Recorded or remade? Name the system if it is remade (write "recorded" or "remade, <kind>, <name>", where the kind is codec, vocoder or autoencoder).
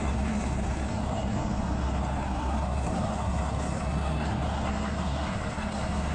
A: remade, codec, SNAC